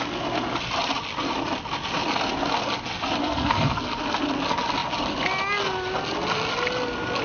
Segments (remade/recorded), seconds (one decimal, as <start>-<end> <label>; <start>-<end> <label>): 0.0-3.2 recorded; 3.2-4.0 remade; 4.0-7.2 recorded